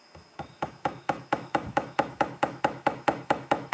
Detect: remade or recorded remade